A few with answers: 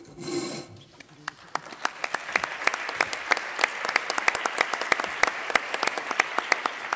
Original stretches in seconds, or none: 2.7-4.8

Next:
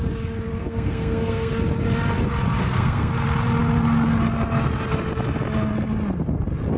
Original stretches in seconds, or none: 0.0-0.6; 1.5-2.6; 3.1-6.8